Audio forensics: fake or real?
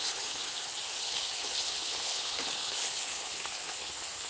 fake